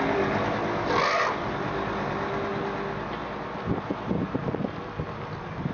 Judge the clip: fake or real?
real